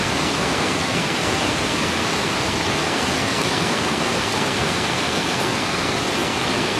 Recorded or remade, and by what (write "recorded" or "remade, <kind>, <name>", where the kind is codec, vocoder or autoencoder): remade, codec, SNAC